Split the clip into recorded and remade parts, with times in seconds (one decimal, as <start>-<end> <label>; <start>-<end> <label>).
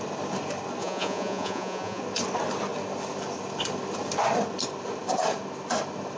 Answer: 0.0-0.8 recorded; 0.8-2.0 remade; 2.0-6.2 recorded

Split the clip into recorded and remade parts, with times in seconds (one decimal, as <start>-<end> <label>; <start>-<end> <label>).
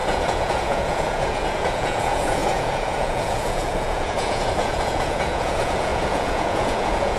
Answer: 0.0-7.2 remade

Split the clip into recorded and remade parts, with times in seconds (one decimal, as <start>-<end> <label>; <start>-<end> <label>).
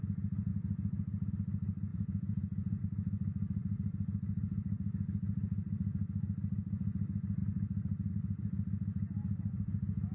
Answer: 0.0-1.9 recorded; 1.9-2.8 remade; 2.8-10.1 recorded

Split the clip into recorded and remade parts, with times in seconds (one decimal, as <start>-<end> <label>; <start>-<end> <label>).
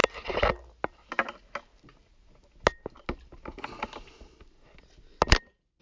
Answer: 0.0-5.8 recorded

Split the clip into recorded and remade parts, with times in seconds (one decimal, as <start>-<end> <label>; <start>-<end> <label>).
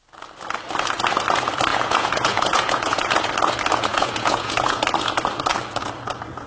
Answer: 0.0-1.7 recorded; 1.7-3.3 remade; 3.3-3.9 recorded; 3.9-4.8 remade; 4.8-6.5 recorded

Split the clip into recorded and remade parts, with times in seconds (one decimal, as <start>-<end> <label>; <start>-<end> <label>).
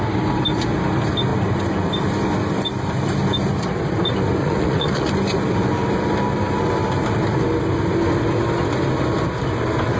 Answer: 0.0-4.4 recorded; 4.4-5.1 remade; 5.1-10.0 recorded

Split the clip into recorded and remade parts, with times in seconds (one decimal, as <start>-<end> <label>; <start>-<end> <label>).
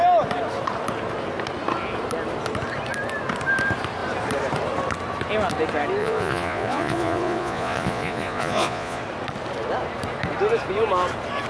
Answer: 0.0-6.0 recorded; 6.0-9.0 remade; 9.0-11.5 recorded